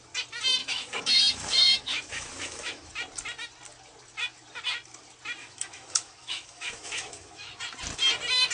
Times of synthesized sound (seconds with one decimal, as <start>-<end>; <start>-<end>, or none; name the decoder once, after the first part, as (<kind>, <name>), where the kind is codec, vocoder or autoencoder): 0.6-2.9 (autoencoder, DAC-VAE); 5.4-7.5